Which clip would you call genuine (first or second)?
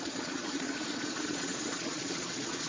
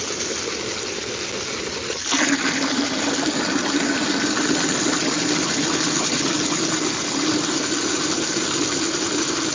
second